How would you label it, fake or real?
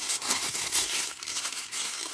fake